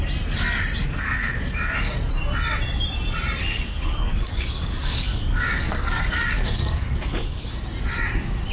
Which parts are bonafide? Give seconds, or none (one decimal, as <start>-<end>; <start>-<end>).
0.0-0.8; 1.9-3.4; 7.4-8.5